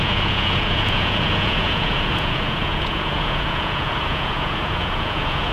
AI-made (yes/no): yes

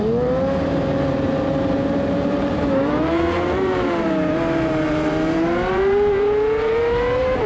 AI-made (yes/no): yes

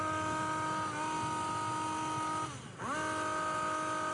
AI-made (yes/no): no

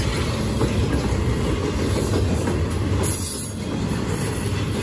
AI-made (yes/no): no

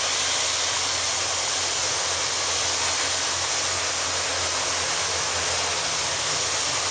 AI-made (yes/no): no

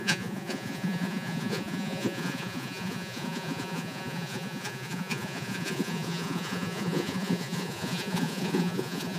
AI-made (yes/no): yes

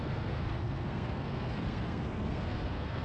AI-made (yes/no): yes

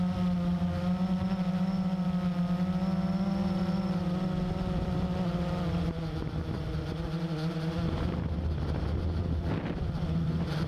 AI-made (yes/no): no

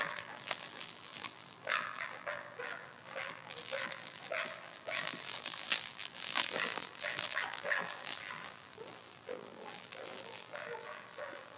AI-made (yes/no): yes